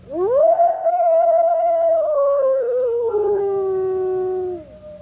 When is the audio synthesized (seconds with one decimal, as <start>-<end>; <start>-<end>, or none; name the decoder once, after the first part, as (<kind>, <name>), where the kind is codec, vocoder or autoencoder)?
0.4-3.4 (codec, SNAC)

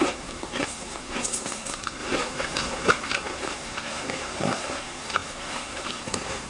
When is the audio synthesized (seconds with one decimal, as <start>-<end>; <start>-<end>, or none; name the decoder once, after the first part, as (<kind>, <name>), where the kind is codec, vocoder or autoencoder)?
0.0-6.5 (codec, SNAC)

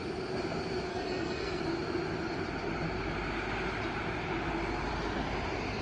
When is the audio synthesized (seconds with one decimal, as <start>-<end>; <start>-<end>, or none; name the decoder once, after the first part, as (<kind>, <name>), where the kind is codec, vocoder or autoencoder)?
0.9-1.6 (codec, SNAC)

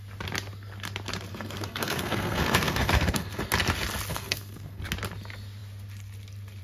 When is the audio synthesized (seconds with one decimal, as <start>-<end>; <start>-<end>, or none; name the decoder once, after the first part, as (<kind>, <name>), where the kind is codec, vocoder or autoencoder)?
1.3-3.4 (codec, SNAC); 4.1-4.8